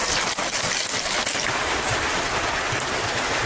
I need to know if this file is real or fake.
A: real